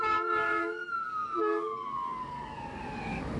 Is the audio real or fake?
fake